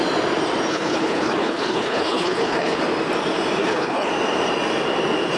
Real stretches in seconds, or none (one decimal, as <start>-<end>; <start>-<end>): 0.0-0.7; 2.8-3.6; 4.1-5.4